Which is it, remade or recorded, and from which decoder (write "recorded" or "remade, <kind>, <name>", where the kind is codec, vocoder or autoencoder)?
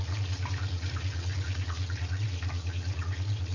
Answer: remade, vocoder, Vocos